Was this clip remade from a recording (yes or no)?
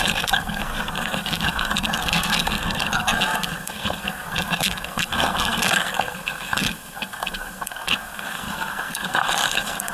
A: yes